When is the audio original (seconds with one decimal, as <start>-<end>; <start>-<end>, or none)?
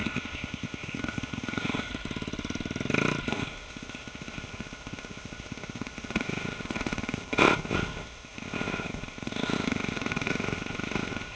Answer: 1.9-3.3